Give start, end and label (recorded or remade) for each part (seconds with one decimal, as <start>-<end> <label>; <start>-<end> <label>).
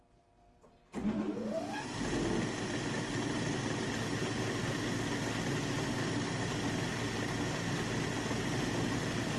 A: 0.0-9.4 recorded